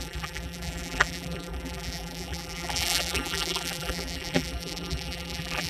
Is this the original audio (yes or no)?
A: no